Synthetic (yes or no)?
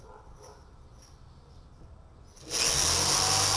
no